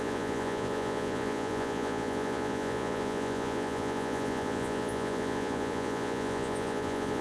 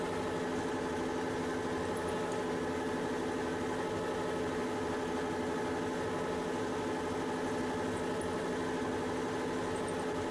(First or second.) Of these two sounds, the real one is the second